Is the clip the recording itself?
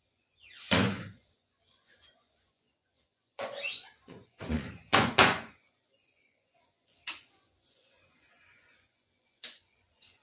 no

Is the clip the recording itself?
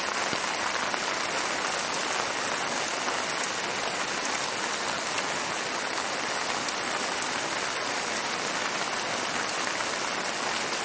yes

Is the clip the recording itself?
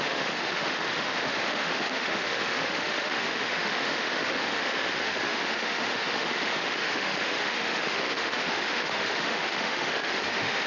no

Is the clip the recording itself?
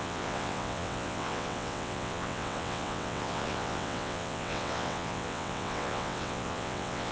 no